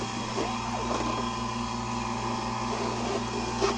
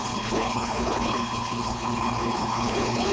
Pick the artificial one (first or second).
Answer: second